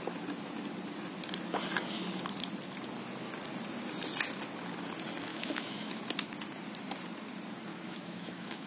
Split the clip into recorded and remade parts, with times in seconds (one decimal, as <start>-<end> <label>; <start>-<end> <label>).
0.0-5.3 recorded; 5.3-6.0 remade; 6.0-7.7 recorded; 7.7-8.7 remade